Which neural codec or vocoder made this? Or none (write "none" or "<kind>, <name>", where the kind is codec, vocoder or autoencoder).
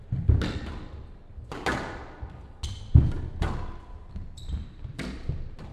none